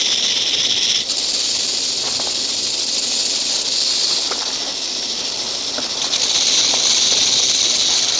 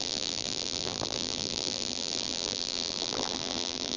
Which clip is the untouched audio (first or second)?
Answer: first